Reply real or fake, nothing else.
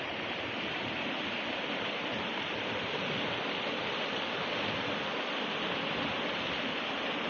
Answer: real